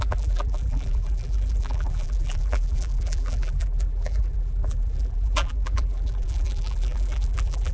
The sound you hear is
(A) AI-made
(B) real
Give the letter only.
A